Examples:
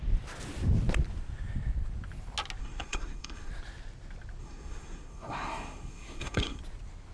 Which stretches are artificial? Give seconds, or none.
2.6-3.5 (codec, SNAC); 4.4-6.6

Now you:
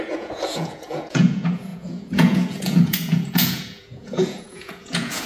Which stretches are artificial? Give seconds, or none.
0.0-5.3 (vocoder, Vocos)

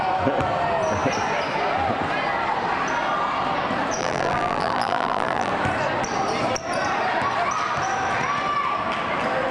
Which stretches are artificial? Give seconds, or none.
4.0-5.5 (vocoder, BigVGAN v2)

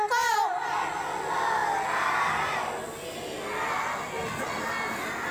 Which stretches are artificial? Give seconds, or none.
none

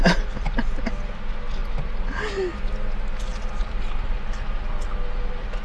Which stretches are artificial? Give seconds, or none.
1.6-2.7 (vocoder, BigVGAN v2); 3.3-5.6

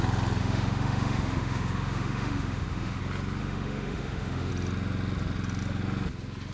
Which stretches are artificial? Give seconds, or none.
0.4-3.0 (autoencoder, DAC-VAE); 3.4-4.5

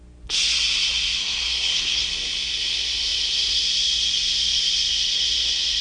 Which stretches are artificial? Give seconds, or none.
1.2-2.1 (codec, SNAC)